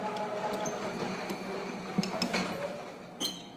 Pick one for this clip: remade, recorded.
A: recorded